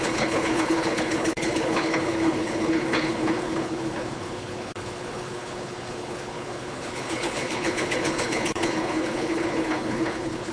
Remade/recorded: remade